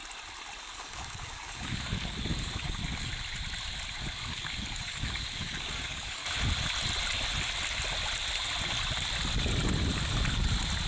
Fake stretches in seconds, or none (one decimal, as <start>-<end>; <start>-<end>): 0.6-3.1; 3.9-6.2

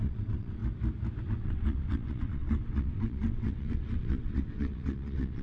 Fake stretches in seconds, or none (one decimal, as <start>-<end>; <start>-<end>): 0.0-0.6; 1.2-5.4